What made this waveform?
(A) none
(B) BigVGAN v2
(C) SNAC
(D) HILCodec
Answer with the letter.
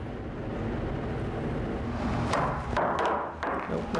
A